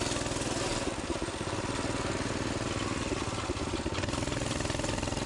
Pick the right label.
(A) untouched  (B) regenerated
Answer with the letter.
A